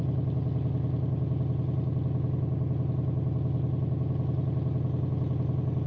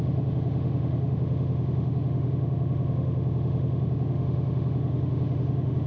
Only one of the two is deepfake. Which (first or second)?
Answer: second